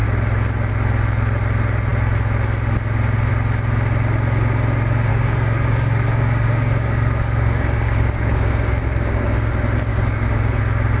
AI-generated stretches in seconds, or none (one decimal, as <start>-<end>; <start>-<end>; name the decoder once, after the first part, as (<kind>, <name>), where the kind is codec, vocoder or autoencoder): 5.1-9.5 (codec, DAC); 9.9-10.6